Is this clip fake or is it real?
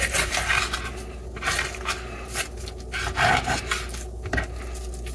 real